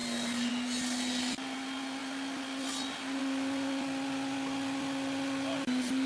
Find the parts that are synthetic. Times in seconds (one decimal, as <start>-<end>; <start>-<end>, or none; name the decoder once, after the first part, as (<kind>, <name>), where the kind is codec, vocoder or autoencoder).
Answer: none